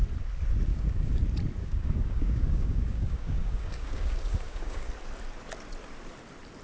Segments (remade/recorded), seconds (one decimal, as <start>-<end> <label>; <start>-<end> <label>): 0.0-0.7 recorded; 0.7-1.2 remade; 1.2-1.6 recorded; 1.6-4.9 remade; 4.9-6.6 recorded